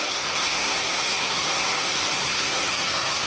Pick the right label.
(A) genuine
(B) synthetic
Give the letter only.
B